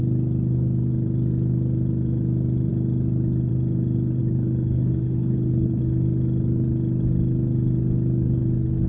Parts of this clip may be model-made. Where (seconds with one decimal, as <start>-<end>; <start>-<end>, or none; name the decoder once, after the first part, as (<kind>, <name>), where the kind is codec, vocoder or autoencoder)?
4.2-5.8 (codec, HILCodec)